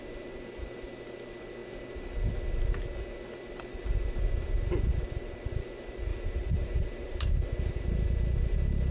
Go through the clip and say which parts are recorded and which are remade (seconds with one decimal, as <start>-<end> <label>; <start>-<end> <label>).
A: 0.0-6.1 recorded; 6.1-7.3 remade; 7.3-8.9 recorded